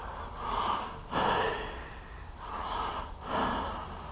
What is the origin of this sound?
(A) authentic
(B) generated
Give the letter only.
A